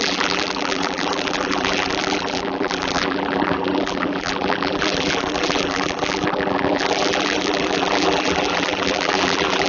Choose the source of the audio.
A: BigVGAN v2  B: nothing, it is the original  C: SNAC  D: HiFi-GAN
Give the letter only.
A